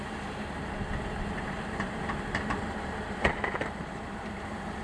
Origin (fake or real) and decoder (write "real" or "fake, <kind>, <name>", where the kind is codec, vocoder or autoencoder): fake, vocoder, BigVGAN v2